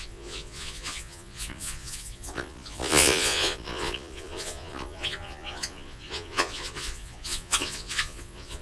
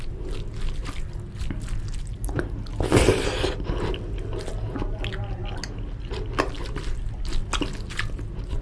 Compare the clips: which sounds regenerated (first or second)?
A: first